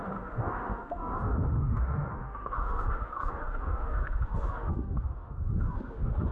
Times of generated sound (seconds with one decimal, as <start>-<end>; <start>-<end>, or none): 0.0-6.3